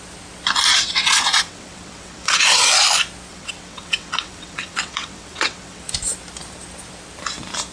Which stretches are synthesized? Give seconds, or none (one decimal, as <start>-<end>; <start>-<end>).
0.7-2.7; 3.3-5.8